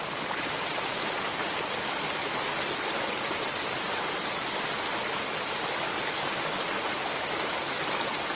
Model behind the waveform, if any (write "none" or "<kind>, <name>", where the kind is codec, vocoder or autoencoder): none